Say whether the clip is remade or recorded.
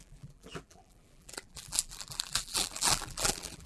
remade